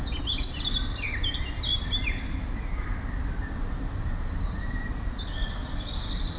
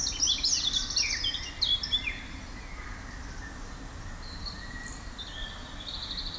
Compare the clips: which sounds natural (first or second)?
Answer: second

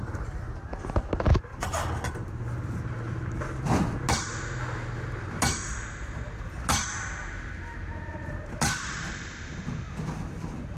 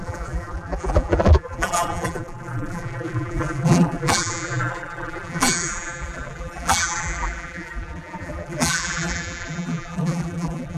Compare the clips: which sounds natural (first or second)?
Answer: first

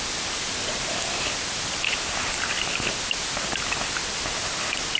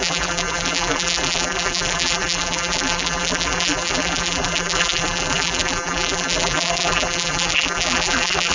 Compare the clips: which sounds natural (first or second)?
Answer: first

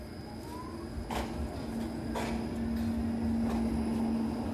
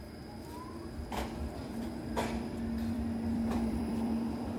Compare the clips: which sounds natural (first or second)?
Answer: first